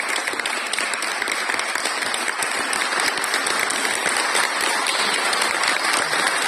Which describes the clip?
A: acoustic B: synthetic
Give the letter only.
B